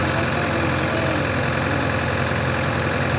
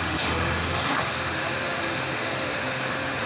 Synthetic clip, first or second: second